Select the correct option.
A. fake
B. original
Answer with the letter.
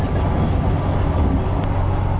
B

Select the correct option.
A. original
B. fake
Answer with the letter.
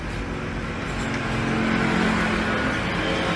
A